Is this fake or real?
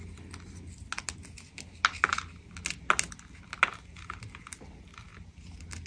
real